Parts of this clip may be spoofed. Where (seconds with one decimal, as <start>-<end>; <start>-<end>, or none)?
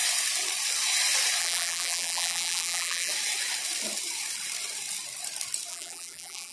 1.4-3.1; 5.7-6.5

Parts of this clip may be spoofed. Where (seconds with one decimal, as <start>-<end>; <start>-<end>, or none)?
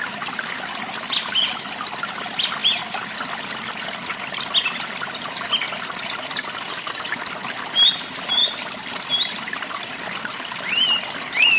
none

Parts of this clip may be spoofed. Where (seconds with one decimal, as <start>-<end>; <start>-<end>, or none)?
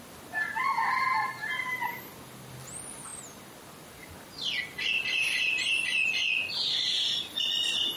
none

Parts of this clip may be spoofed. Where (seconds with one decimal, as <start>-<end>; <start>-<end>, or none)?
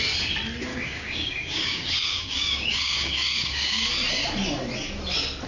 0.7-3.9